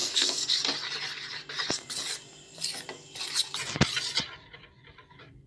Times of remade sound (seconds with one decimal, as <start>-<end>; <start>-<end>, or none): 0.0-0.5